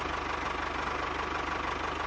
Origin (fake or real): real